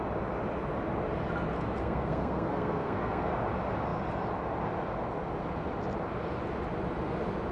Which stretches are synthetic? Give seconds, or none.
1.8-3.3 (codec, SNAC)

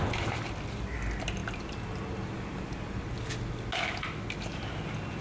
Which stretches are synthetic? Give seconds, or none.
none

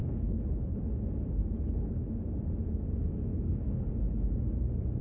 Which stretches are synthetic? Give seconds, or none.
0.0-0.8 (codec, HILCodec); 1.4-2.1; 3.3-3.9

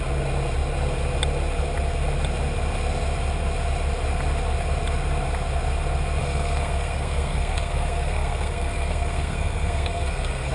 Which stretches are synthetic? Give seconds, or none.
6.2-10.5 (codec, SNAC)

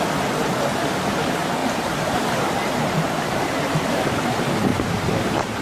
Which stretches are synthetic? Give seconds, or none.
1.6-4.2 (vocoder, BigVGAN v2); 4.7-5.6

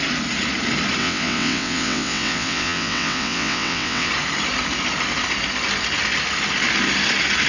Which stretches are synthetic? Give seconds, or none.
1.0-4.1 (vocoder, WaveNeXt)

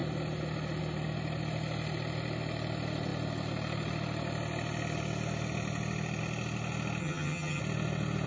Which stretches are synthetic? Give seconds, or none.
7.0-7.6 (vocoder, HiFi-GAN)